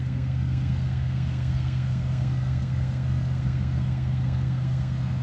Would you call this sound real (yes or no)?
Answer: no